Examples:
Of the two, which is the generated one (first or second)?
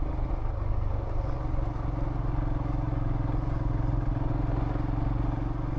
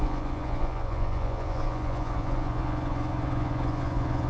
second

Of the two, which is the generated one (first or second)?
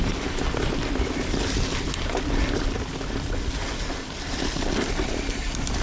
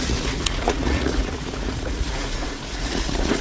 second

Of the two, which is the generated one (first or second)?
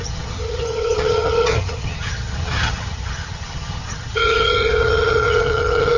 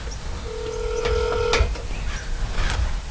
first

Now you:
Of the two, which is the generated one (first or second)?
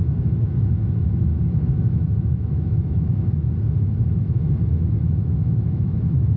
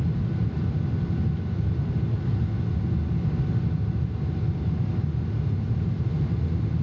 first